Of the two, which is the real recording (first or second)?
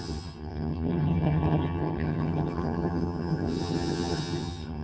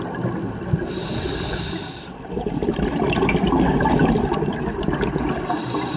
second